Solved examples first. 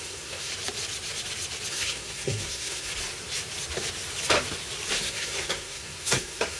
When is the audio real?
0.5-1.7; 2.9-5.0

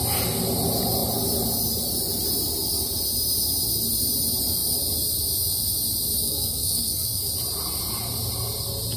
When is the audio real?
0.0-6.2; 7.3-9.0